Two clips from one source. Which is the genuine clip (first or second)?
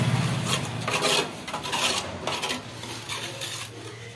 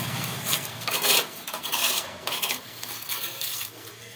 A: first